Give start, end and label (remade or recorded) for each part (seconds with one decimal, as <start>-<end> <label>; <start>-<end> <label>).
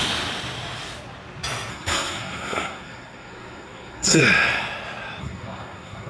0.0-1.7 recorded; 1.7-4.2 remade; 4.2-5.2 recorded; 5.2-6.1 remade